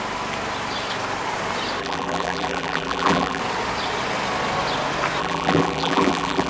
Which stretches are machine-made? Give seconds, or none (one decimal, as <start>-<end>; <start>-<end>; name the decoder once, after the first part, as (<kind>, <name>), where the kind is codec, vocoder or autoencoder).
1.8-3.4 (vocoder, BigVGAN v2); 5.2-6.5